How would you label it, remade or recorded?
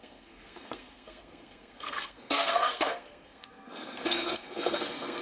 remade